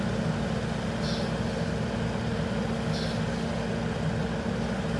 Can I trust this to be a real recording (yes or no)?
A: yes